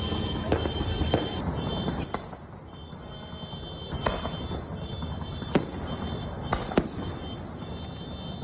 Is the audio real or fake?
real